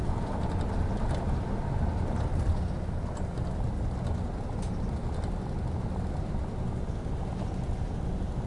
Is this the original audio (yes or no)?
yes